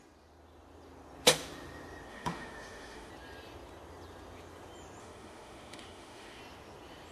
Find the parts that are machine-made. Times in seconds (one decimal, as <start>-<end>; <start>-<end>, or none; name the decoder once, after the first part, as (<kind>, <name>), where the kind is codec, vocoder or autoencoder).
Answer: 2.1-3.1 (autoencoder, DAC-VAE); 5.0-6.4